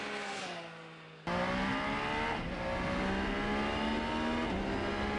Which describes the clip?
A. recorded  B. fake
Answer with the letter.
A